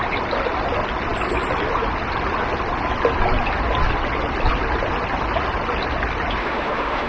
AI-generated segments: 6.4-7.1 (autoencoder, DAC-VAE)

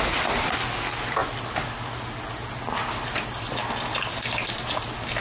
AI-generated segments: none

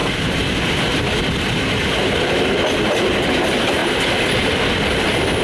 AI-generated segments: none